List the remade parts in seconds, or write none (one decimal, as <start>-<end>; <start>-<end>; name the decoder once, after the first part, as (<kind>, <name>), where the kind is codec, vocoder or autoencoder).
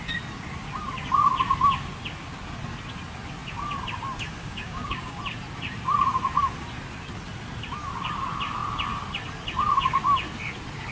4.4-5.2 (codec, DAC)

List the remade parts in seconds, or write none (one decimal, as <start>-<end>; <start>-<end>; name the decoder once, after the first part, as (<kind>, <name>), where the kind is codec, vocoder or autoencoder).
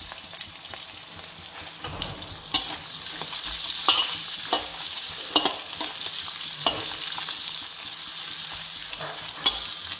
4.7-5.2 (codec, DAC)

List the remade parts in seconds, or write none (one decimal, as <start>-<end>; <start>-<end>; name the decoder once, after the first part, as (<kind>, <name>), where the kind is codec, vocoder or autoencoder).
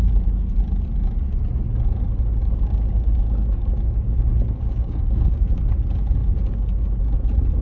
2.4-5.6 (codec, DAC)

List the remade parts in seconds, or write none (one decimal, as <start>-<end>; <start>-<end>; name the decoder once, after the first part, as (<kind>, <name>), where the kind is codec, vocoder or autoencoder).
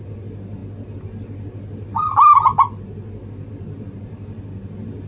none